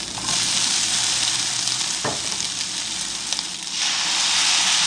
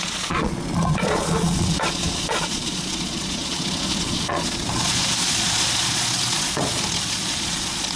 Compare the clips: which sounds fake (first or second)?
second